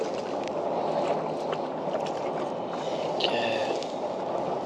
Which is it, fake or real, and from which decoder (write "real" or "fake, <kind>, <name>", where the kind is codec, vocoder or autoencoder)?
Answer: real